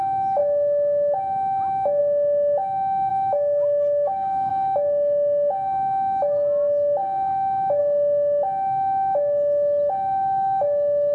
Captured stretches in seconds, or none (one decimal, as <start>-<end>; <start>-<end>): 0.0-3.1; 4.5-11.1